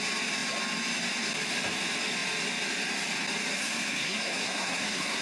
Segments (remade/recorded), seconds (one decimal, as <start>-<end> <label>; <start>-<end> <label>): 0.0-3.6 recorded; 3.6-5.2 remade